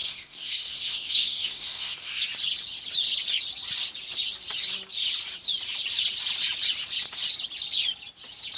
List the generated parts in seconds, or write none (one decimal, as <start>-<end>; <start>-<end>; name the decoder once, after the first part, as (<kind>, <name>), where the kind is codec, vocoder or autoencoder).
0.0-2.2 (codec, SNAC)